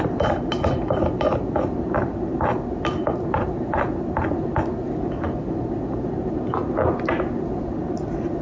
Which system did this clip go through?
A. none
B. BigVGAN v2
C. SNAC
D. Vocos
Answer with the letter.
A